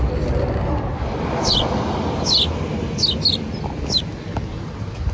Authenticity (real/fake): real